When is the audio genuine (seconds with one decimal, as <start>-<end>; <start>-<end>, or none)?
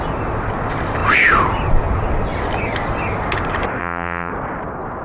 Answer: 0.0-3.8; 4.3-5.0